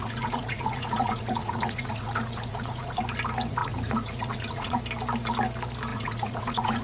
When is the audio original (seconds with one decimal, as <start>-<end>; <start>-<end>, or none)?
3.0-3.6; 4.8-5.9